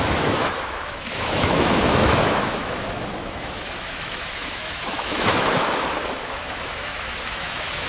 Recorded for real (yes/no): no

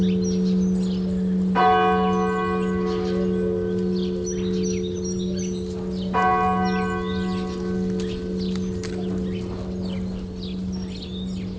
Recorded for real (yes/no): yes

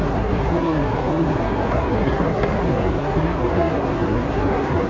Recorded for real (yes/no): no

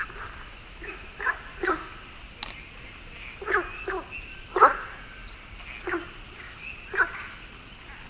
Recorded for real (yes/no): yes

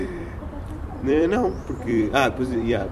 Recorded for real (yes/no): no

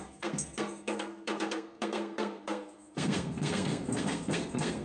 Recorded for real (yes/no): no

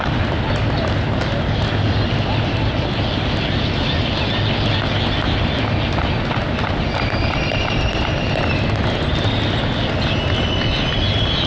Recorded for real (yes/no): yes